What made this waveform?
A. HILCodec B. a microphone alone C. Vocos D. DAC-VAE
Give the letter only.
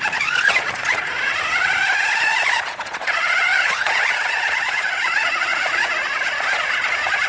C